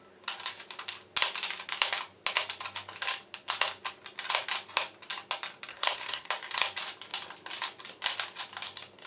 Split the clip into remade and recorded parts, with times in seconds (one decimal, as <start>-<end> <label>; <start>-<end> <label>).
0.0-5.7 recorded; 5.7-6.3 remade; 6.3-9.1 recorded